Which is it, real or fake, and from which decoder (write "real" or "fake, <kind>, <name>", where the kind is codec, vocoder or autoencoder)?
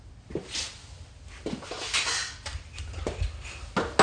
real